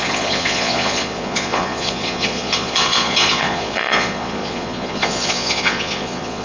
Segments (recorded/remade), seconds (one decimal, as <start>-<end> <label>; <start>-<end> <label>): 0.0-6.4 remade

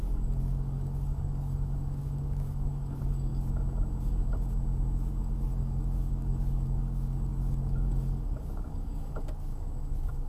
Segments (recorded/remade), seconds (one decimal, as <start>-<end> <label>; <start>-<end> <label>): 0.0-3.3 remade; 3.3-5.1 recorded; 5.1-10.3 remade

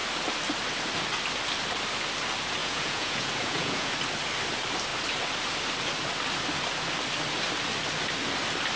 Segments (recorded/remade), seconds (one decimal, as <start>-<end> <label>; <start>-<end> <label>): 0.0-2.6 recorded; 2.6-3.9 remade; 3.9-8.8 recorded

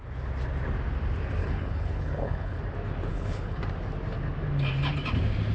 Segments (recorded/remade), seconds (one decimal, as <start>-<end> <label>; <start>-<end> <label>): 0.0-1.4 recorded; 1.4-2.6 remade; 2.6-3.1 recorded; 3.1-3.6 remade; 3.6-5.5 recorded